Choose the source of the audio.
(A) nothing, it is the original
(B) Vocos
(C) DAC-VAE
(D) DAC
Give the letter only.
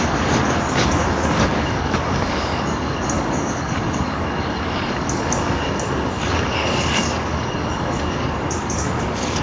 D